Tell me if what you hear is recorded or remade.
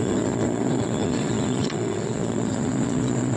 remade